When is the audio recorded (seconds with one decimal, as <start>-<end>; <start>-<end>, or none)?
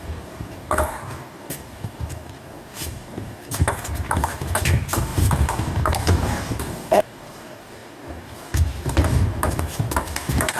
none